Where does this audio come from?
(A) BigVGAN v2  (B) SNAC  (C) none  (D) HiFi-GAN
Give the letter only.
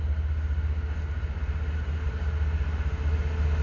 C